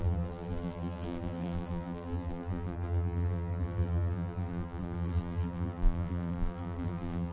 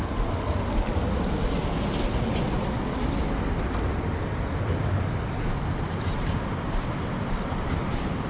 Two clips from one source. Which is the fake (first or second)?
first